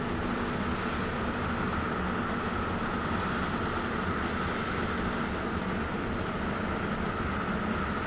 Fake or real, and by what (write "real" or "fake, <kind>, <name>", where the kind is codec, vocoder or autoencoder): real